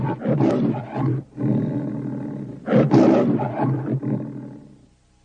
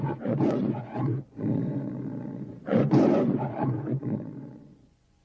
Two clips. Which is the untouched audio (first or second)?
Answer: first